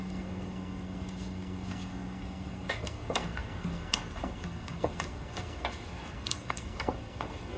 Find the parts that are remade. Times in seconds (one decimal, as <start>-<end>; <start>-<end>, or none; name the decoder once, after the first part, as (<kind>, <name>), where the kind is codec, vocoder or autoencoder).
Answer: 0.0-7.6 (codec, SNAC)